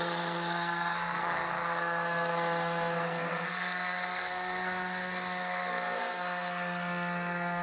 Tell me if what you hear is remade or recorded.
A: remade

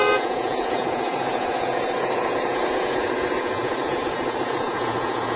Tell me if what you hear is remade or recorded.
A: remade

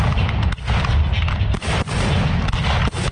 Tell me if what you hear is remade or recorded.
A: recorded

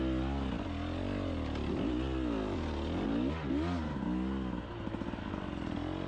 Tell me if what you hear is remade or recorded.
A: recorded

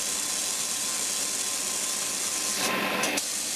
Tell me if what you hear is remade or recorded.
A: recorded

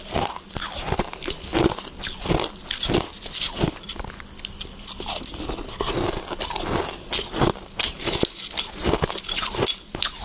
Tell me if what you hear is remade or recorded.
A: recorded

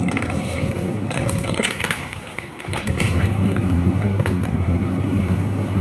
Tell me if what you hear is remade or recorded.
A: remade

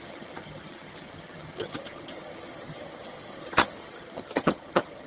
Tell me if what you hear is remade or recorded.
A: remade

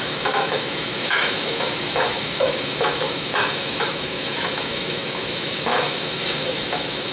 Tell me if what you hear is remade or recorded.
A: remade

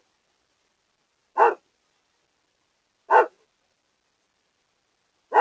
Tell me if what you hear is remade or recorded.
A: recorded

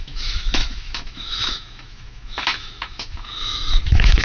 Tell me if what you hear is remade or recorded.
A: remade